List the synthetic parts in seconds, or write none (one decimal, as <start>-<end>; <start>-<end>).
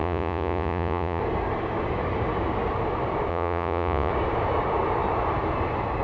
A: 0.0-1.2; 3.3-4.1